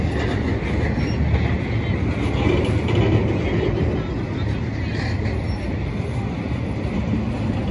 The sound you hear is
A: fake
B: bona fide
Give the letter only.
B